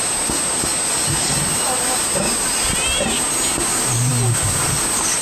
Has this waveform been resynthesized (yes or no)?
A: no